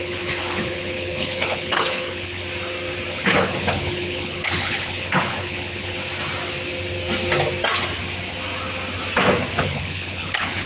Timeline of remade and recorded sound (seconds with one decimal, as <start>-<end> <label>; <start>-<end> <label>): 0.0-2.4 remade; 2.4-3.1 recorded; 3.1-6.0 remade; 6.0-9.6 recorded; 9.6-10.7 remade